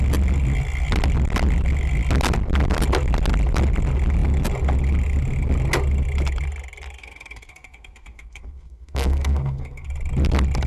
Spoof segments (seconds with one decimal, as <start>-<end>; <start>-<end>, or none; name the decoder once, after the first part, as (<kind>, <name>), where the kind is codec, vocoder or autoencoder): 7.0-9.9 (codec, SNAC)